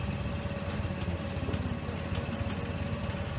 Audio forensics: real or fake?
real